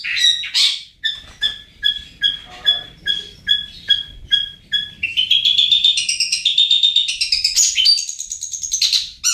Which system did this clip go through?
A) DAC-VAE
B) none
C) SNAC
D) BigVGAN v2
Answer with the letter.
B